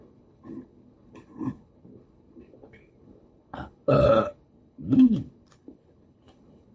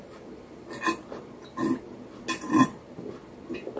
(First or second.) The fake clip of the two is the first